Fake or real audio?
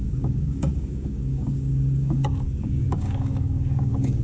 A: fake